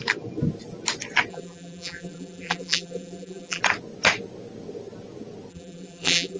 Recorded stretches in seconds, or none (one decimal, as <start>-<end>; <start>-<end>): 0.0-1.3; 3.6-5.5